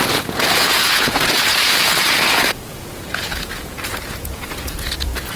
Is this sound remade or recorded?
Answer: remade